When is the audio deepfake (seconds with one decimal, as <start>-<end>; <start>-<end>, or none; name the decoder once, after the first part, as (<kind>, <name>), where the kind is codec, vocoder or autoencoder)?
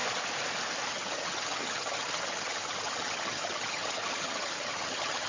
0.9-5.3 (vocoder, HiFi-GAN)